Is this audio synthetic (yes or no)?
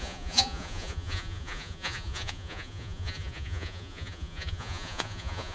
yes